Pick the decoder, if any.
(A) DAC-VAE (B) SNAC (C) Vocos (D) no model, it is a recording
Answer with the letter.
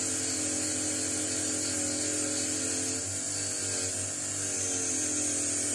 D